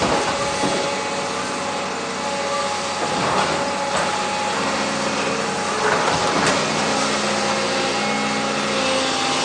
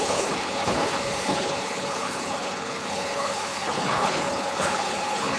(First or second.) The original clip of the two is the first